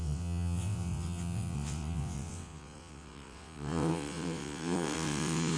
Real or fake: fake